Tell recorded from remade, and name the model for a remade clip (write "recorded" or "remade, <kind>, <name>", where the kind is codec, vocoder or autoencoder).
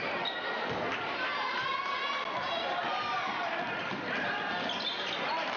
recorded